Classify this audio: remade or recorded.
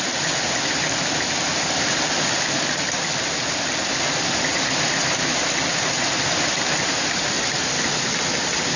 recorded